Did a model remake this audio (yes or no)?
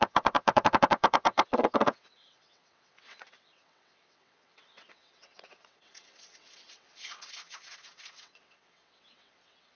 yes